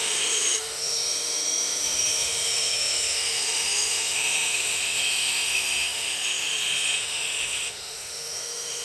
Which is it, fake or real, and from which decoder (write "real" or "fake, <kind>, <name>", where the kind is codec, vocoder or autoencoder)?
fake, autoencoder, DAC-VAE